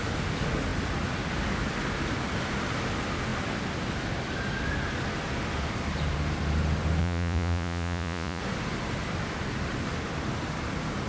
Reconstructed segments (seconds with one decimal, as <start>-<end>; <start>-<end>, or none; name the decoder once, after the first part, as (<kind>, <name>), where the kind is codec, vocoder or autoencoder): 7.0-8.4 (vocoder, Vocos)